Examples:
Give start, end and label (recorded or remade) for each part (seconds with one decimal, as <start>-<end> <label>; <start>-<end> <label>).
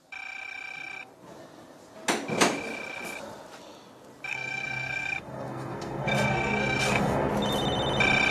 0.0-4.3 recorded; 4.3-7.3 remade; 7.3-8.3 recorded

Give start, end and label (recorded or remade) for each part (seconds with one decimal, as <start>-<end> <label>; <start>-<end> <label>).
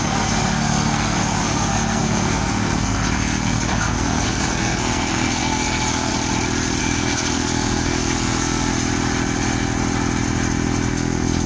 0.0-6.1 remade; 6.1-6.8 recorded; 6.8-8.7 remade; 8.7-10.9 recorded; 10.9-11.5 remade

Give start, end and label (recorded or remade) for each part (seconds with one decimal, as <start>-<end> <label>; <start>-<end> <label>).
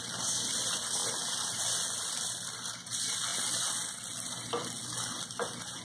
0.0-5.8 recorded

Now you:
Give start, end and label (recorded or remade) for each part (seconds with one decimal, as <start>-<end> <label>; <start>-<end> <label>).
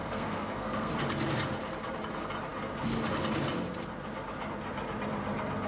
0.0-0.9 remade; 0.9-5.7 recorded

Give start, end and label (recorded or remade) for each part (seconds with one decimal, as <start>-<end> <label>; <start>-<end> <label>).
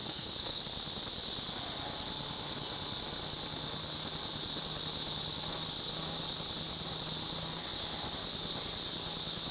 0.0-0.6 remade; 0.6-9.5 recorded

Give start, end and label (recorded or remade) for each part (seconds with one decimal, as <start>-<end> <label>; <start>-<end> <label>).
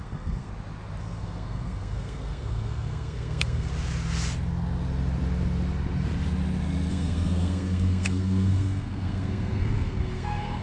0.0-0.5 remade; 0.5-1.0 recorded; 1.0-3.7 remade; 3.7-6.9 recorded; 6.9-10.6 remade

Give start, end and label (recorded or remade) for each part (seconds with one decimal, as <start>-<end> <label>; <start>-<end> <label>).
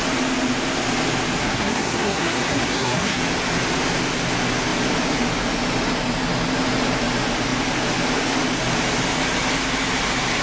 0.0-1.4 recorded; 1.4-3.2 remade; 3.2-10.4 recorded